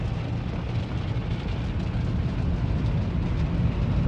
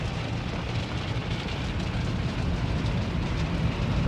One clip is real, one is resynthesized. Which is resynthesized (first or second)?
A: second